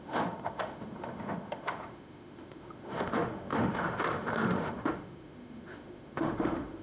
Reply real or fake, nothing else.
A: fake